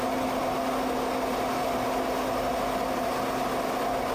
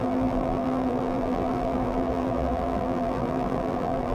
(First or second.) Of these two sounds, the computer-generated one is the second